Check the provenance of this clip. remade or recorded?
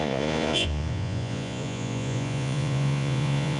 remade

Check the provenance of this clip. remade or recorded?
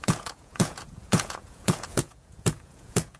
remade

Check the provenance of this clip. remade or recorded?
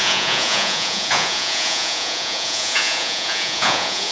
remade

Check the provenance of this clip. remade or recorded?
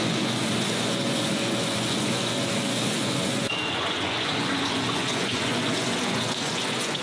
remade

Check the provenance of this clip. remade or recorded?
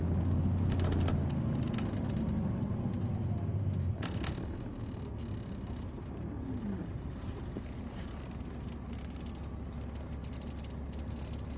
recorded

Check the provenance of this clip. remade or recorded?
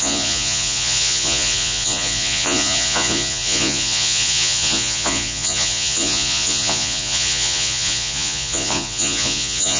remade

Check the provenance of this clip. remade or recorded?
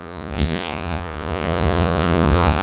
remade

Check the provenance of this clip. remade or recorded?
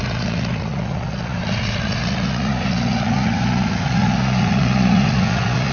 remade